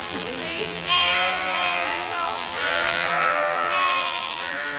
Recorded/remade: remade